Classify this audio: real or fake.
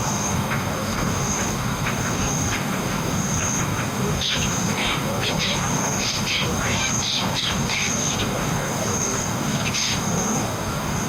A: fake